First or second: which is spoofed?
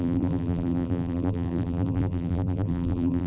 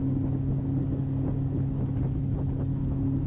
first